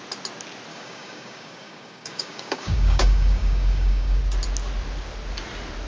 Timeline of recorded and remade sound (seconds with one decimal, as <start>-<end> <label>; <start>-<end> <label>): 0.0-0.7 recorded; 0.7-4.2 remade; 4.2-5.9 recorded